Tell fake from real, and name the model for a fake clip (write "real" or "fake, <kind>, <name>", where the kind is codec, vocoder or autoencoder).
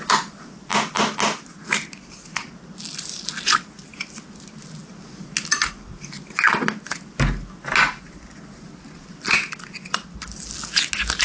real